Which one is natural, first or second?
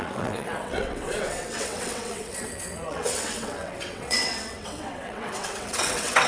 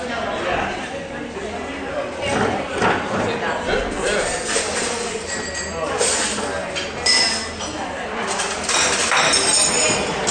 second